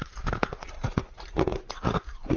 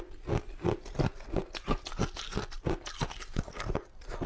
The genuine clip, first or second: second